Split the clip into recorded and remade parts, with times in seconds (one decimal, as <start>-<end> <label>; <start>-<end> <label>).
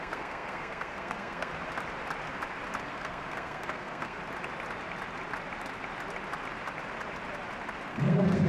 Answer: 0.0-1.5 remade; 1.5-2.8 recorded; 2.8-4.2 remade; 4.2-7.9 recorded; 7.9-8.5 remade